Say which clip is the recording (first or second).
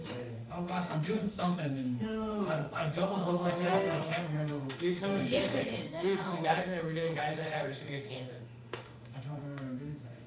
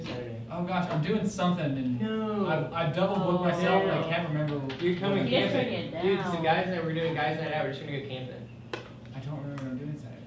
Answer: second